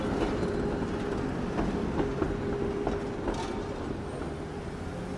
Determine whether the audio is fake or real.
real